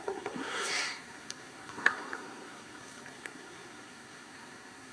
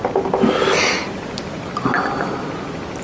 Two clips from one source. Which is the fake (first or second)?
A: first